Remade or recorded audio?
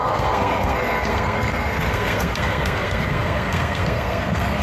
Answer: remade